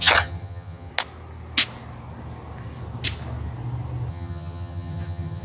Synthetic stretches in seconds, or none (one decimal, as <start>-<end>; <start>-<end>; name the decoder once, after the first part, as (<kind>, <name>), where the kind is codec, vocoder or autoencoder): 0.0-0.9 (vocoder, HiFi-GAN); 4.1-5.4